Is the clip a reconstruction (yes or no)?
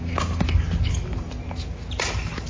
no